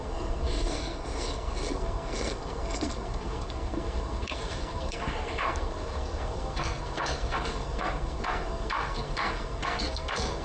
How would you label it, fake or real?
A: fake